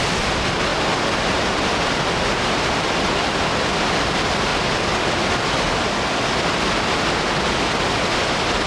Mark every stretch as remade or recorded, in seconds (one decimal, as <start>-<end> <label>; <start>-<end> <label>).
0.0-8.7 recorded